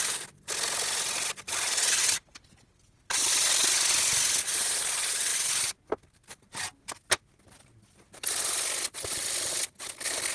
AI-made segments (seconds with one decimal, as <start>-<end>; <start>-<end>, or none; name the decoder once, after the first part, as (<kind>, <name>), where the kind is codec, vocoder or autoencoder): none